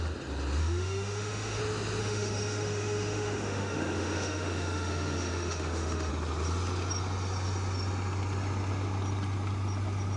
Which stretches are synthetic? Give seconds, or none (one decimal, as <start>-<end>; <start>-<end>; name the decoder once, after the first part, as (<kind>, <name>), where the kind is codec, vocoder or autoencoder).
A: 0.6-1.6 (autoencoder, DAC-VAE); 2.0-6.1